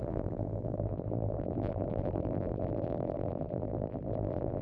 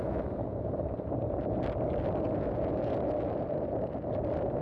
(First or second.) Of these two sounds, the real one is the second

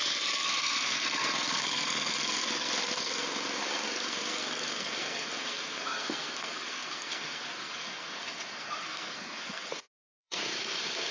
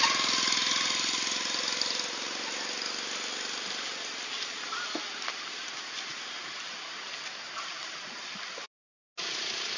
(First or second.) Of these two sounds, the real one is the second